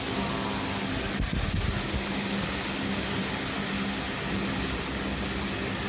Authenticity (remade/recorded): recorded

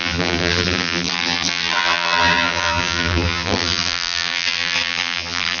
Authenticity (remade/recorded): remade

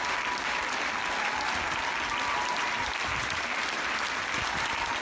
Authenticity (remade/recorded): recorded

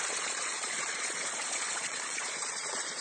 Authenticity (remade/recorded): remade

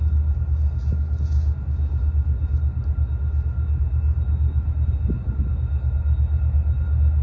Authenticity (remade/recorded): recorded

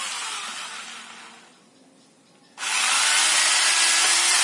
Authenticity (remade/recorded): recorded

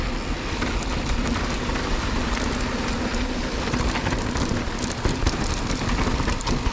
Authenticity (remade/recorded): recorded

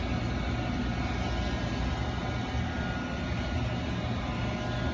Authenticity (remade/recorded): recorded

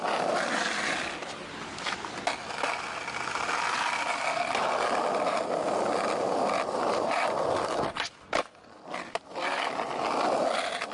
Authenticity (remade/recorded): recorded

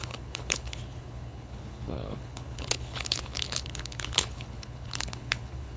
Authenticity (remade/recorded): remade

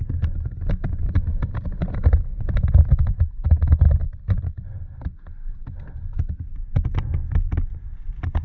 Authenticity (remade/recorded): recorded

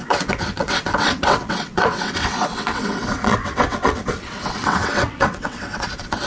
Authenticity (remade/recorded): remade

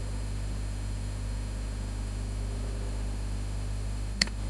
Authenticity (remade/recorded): remade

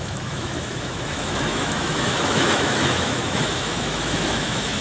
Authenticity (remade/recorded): remade